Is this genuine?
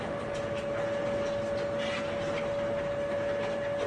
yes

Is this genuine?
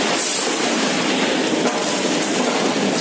yes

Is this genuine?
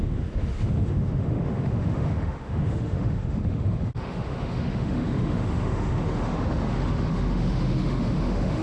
no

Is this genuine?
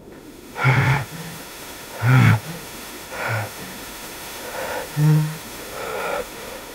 no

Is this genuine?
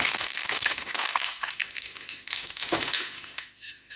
no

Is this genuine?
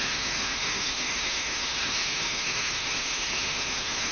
no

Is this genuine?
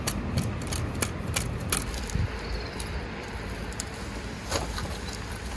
yes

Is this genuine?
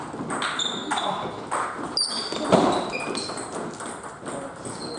yes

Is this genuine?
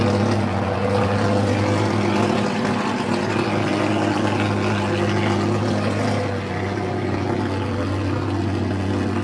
yes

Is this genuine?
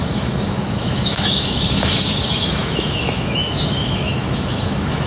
no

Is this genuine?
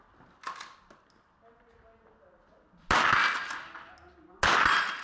yes